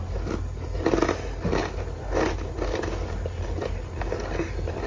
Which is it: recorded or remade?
recorded